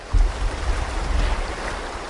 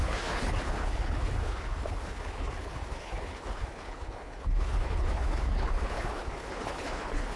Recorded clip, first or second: first